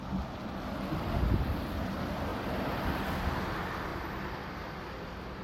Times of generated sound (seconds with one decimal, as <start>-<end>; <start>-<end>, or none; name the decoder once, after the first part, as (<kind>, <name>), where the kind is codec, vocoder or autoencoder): none